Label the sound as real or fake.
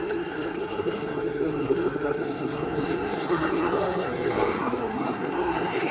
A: fake